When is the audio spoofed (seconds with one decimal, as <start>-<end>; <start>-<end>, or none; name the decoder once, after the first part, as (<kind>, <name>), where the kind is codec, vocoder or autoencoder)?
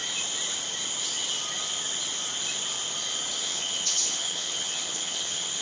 3.4-5.6 (vocoder, HiFi-GAN)